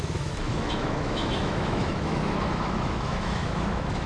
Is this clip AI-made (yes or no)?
yes